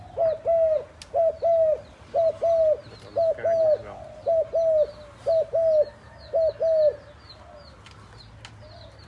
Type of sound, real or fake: real